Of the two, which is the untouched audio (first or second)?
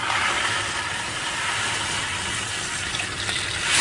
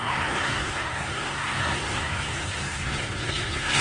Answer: first